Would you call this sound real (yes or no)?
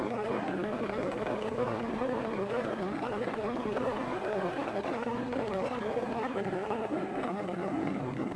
no